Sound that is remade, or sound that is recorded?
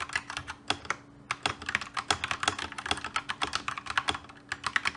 recorded